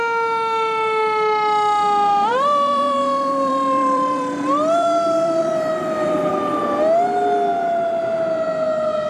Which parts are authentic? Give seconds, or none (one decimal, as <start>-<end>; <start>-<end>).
0.0-2.3; 6.3-9.1